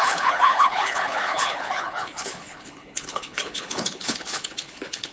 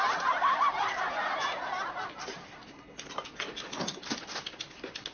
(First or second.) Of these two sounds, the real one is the second